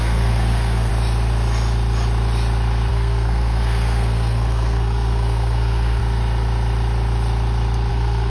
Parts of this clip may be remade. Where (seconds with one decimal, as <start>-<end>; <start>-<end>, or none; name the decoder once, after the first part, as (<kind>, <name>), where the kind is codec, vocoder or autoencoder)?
0.0-0.9 (codec, SNAC); 2.9-6.0; 7.9-8.3